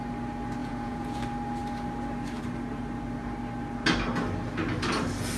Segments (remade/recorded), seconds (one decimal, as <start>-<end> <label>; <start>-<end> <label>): 0.0-0.6 recorded; 0.6-1.2 remade; 1.2-5.4 recorded